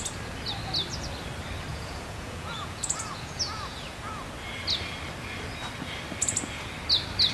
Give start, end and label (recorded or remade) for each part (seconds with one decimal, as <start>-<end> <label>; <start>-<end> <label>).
0.0-1.7 recorded; 1.7-4.2 remade; 4.2-7.3 recorded